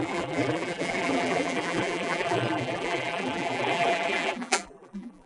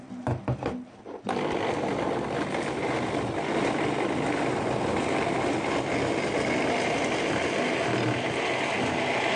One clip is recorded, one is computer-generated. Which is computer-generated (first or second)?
first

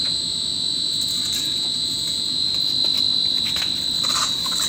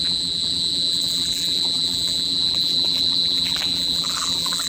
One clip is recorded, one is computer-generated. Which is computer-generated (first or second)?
second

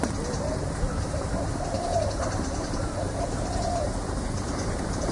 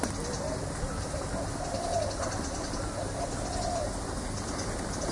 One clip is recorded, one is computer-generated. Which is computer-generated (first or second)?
first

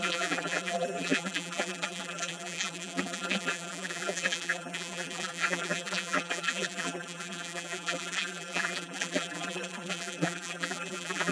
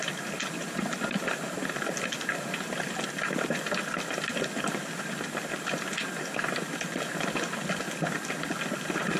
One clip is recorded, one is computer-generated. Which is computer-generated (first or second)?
first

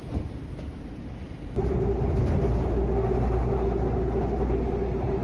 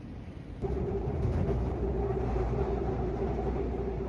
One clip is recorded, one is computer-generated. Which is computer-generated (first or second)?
second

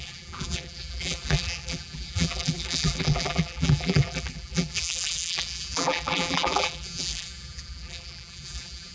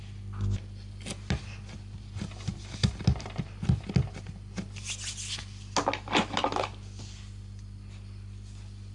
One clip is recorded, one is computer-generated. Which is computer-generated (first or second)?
first